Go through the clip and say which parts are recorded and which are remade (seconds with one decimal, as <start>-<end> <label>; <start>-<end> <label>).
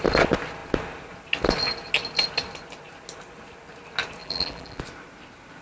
0.0-4.2 recorded; 4.2-4.8 remade; 4.8-5.6 recorded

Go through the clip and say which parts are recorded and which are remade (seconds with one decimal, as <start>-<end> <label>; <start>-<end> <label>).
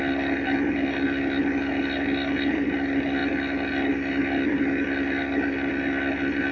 0.0-6.5 recorded